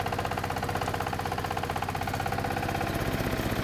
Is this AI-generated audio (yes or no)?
no